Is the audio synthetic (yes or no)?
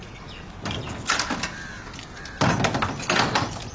no